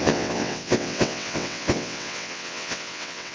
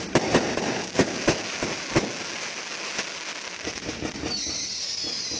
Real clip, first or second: second